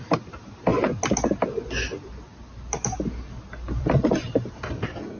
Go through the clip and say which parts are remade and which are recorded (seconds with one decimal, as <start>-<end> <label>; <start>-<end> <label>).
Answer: 0.0-0.7 remade; 0.7-3.8 recorded; 3.8-5.2 remade